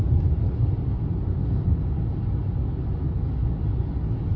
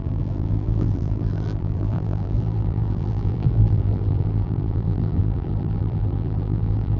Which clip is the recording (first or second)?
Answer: first